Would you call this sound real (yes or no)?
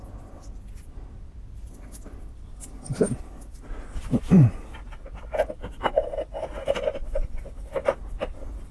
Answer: no